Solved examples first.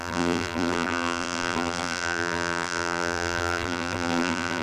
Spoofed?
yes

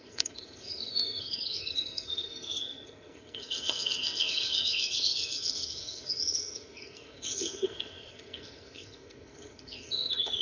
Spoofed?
yes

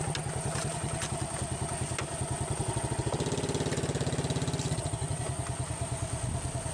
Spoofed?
no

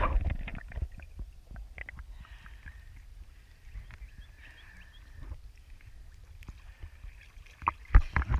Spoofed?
no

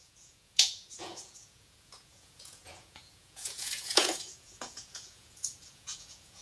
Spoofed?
yes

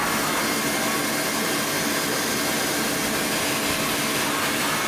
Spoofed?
no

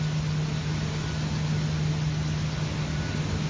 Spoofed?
no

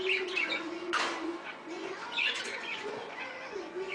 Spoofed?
yes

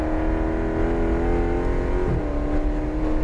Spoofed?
no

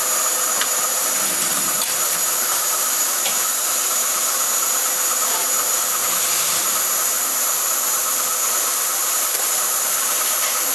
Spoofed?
yes